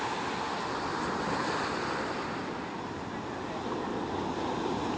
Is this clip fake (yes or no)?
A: no